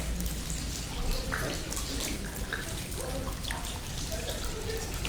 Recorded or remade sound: recorded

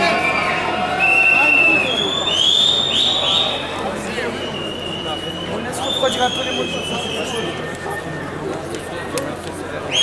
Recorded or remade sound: recorded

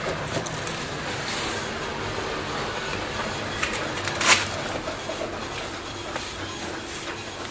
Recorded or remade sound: recorded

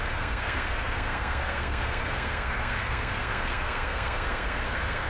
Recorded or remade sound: remade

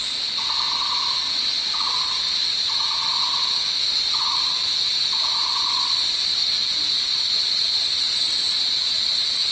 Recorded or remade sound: recorded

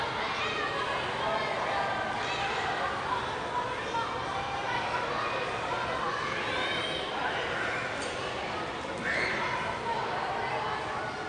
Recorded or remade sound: recorded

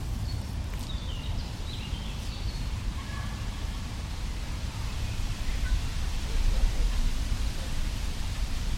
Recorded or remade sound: remade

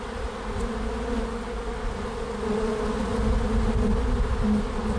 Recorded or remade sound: recorded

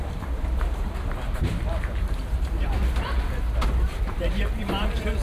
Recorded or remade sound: remade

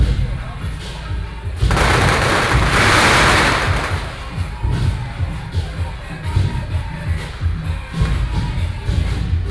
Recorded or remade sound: recorded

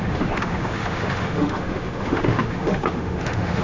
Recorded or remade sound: remade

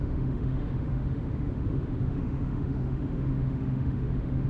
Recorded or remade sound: remade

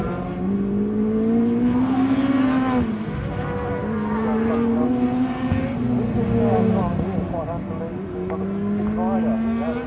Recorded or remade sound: recorded